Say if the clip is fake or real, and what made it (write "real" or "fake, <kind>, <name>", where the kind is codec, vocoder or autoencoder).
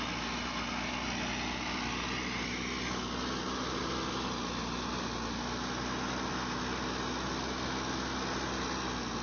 real